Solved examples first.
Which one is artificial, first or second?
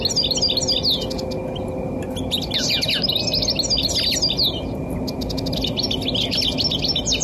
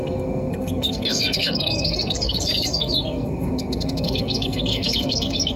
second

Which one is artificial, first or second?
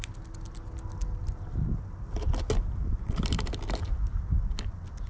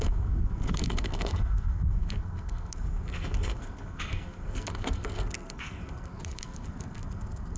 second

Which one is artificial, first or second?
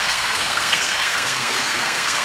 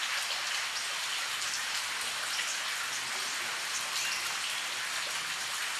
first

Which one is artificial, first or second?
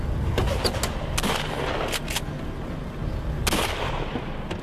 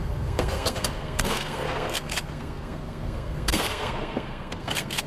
second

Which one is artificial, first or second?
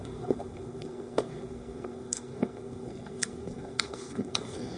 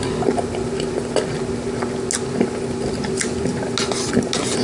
first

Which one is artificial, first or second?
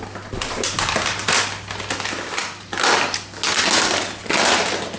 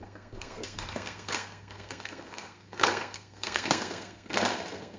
second